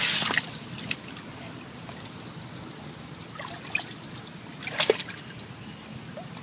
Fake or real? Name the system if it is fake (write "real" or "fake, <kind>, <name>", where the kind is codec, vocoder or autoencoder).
real